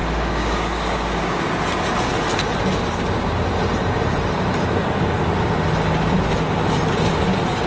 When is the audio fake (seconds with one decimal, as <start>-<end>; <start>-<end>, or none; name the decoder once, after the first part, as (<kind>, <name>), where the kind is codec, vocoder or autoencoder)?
0.0-1.4 (codec, DAC)